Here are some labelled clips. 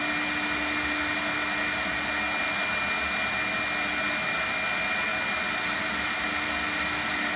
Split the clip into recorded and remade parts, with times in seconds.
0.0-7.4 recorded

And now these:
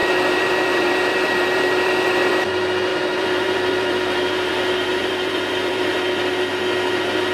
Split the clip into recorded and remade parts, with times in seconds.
0.0-2.5 remade; 2.5-2.9 recorded; 2.9-4.5 remade; 4.5-5.0 recorded; 5.0-6.2 remade; 6.2-7.3 recorded